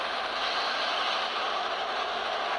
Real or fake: real